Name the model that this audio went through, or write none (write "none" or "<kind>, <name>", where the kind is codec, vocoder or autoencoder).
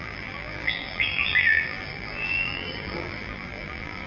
vocoder, BigVGAN v2